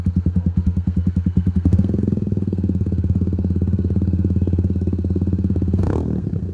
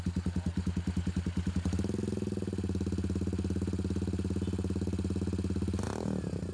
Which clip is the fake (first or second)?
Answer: first